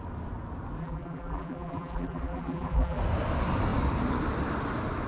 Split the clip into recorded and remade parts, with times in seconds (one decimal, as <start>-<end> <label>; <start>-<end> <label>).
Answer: 0.0-0.8 recorded; 0.8-3.0 remade; 3.0-5.1 recorded